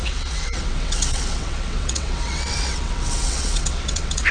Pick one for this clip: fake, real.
fake